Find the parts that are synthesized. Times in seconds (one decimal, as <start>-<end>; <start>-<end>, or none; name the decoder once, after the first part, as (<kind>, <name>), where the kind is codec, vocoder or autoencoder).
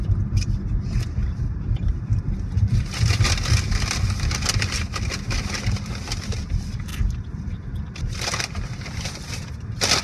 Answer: 1.2-2.0 (vocoder, BigVGAN v2)